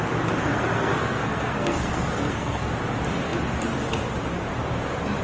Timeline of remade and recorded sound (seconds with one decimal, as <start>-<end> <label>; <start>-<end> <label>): 0.0-0.4 recorded; 0.4-2.7 remade; 2.7-5.2 recorded